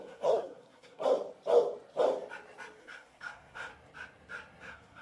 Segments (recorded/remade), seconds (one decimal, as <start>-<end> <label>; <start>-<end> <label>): 0.0-1.0 remade; 1.0-2.8 recorded; 2.8-3.7 remade; 3.7-4.6 recorded; 4.6-5.0 remade